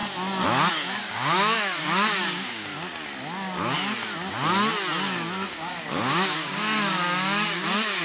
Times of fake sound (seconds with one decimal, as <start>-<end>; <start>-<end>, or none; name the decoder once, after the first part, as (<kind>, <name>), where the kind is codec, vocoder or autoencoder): 0.7-2.7 (codec, DAC); 5.5-8.0